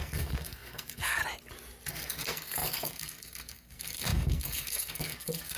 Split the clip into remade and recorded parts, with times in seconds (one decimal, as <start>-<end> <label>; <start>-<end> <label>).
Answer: 0.0-1.2 remade; 1.2-1.9 recorded; 1.9-5.6 remade